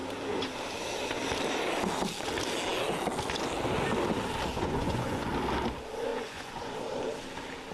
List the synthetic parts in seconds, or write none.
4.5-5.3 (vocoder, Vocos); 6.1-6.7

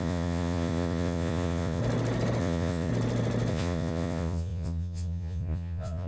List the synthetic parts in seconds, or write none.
0.0-1.8 (vocoder, Vocos); 2.4-2.9; 3.5-6.1

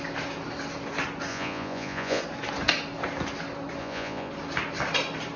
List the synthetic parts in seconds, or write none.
1.3-2.2 (vocoder, Vocos); 3.8-4.3

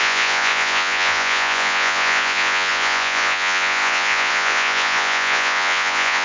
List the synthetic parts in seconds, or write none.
0.0-6.2 (vocoder, Vocos)

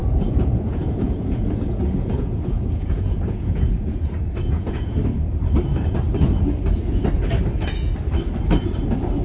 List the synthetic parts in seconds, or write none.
0.0-5.0 (vocoder, Vocos)

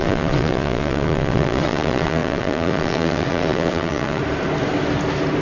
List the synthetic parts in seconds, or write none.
0.0-4.2 (vocoder, Vocos)

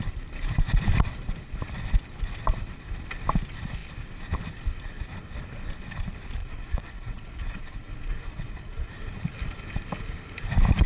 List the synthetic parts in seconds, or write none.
6.4-8.9 (vocoder, Vocos)